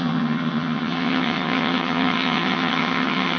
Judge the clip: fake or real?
fake